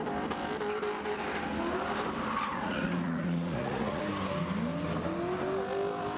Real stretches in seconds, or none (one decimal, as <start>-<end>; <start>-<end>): 0.0-2.5; 4.0-6.2